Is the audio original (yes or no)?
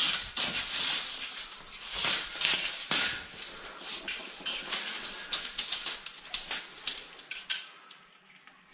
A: yes